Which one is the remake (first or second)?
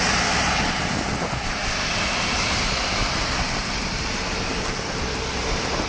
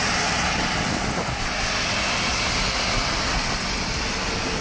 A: first